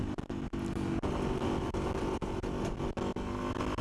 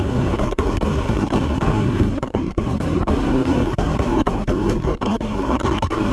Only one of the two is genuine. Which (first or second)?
first